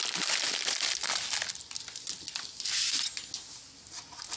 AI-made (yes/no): no